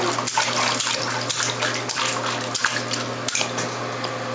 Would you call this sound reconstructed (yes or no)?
no